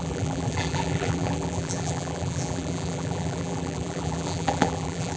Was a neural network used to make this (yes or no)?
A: yes